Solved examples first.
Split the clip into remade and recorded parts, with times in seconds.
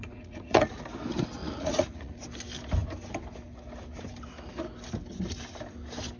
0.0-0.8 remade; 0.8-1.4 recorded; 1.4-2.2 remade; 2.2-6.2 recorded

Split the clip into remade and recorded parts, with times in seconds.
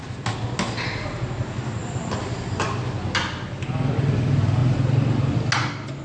0.0-6.0 recorded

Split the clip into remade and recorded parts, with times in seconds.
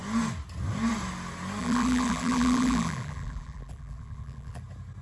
0.0-1.6 recorded; 1.6-4.6 remade; 4.6-5.0 recorded